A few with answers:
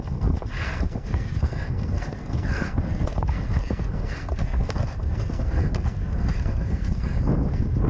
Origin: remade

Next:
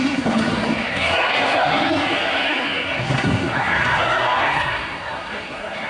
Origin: remade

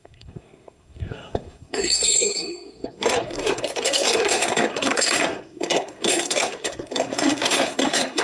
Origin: remade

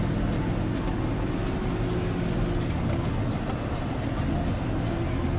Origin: recorded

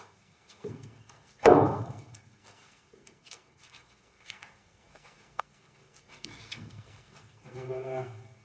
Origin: remade